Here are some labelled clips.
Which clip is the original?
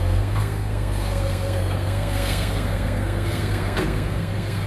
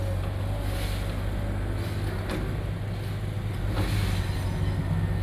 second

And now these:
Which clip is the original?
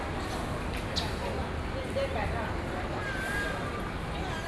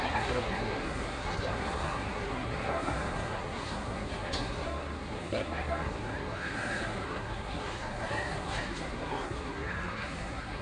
first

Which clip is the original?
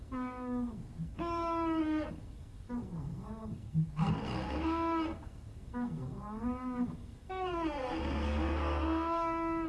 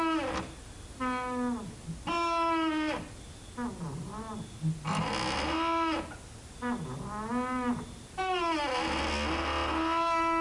second